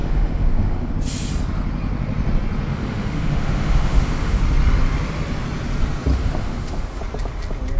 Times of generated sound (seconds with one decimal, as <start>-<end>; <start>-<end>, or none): 0.0-0.9; 2.7-4.4; 6.1-7.0